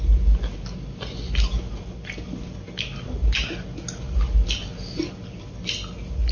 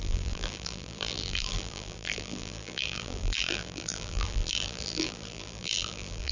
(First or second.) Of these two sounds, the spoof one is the second